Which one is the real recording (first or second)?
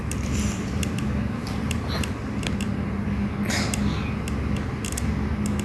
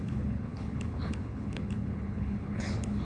first